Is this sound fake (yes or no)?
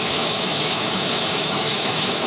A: yes